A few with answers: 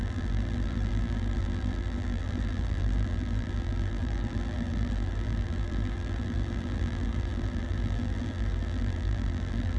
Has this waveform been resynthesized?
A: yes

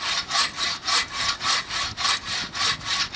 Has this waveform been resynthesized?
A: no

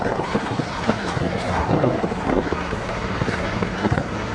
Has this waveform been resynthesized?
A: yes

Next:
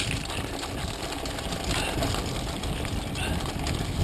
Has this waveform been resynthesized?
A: no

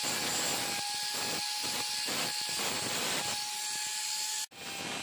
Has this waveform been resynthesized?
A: no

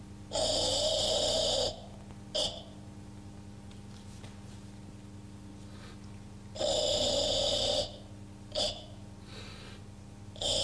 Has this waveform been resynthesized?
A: no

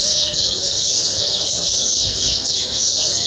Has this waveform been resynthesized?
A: yes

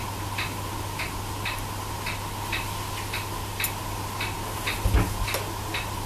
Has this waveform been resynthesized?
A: no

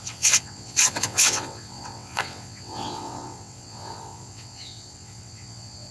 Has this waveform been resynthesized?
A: yes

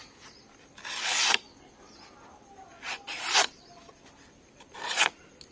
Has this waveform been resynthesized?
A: no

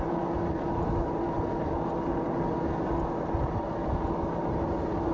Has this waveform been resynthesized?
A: no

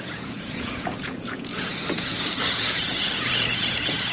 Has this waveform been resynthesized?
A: yes